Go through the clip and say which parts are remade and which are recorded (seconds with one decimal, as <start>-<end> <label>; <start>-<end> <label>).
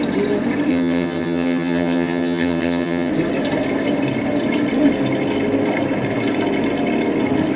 0.0-0.7 recorded; 0.7-3.1 remade; 3.1-7.6 recorded